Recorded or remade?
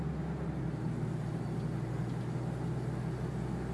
recorded